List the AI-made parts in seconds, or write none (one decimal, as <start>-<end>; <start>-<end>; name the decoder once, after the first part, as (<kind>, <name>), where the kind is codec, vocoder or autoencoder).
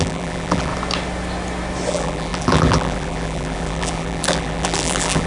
0.0-0.7 (vocoder, BigVGAN v2); 1.9-5.3